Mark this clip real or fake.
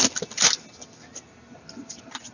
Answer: real